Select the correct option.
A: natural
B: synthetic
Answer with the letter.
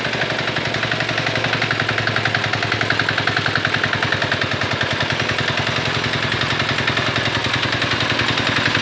A